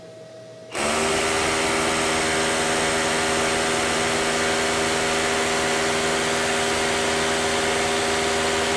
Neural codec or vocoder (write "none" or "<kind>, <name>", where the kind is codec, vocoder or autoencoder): none